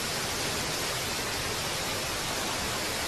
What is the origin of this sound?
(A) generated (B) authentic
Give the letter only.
B